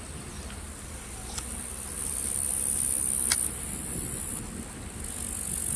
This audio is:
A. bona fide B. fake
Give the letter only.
A